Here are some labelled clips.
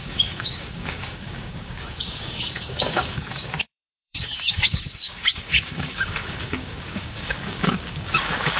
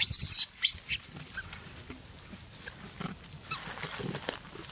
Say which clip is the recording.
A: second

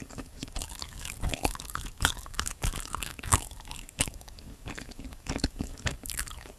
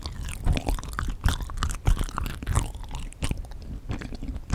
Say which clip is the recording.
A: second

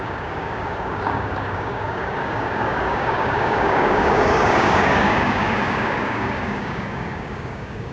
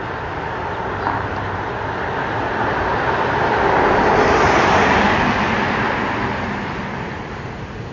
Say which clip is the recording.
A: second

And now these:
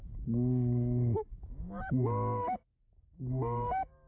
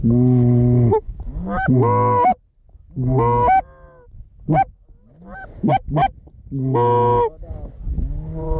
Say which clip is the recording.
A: second